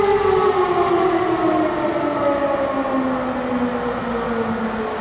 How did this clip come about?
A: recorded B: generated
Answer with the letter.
A